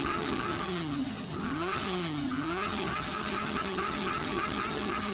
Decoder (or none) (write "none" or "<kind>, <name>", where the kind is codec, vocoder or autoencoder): vocoder, HiFi-GAN